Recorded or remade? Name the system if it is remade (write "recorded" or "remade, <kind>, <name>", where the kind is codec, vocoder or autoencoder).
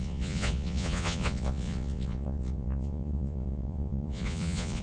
remade, vocoder, Vocos